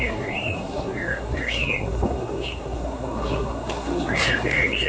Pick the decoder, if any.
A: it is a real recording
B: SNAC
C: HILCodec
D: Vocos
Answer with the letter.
B